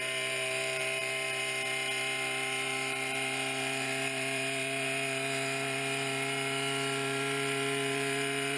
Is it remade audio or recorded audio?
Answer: remade